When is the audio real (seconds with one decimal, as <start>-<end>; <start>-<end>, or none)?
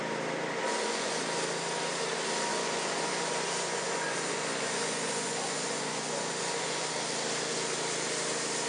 0.0-0.6; 1.2-2.5; 6.9-8.7